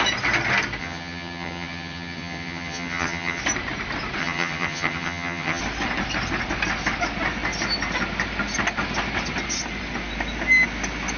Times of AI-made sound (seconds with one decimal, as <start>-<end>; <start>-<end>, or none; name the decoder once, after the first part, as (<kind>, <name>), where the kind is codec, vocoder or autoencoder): 0.8-3.4 (vocoder, HiFi-GAN); 4.2-5.6